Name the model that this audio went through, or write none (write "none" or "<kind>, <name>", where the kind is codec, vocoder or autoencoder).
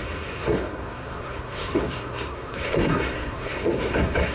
codec, SNAC